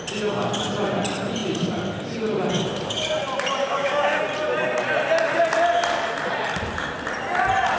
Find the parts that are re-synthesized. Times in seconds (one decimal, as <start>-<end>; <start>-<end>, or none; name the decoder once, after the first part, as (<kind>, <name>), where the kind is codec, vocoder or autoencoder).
3.6-4.2 (codec, DAC)